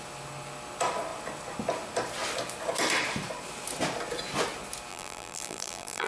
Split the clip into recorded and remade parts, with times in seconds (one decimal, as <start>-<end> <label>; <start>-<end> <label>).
0.0-4.9 recorded; 4.9-6.1 remade